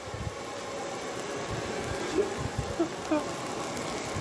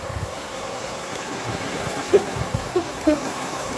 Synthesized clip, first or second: second